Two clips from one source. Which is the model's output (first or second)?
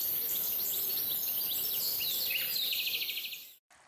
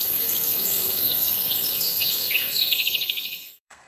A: second